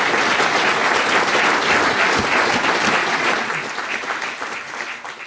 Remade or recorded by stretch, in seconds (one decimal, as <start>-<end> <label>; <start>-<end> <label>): 0.0-3.0 recorded; 3.0-3.5 remade; 3.5-5.3 recorded